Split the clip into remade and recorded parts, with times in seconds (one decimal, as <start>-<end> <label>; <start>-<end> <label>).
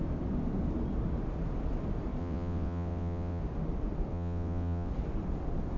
0.0-2.2 recorded; 2.2-3.4 remade; 3.4-4.1 recorded; 4.1-4.9 remade; 4.9-5.8 recorded